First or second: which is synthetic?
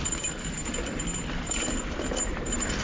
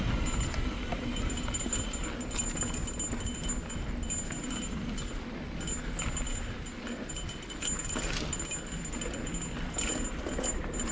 first